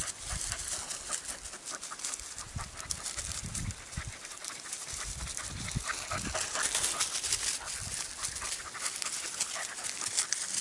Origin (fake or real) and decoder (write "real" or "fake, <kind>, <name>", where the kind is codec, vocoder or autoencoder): real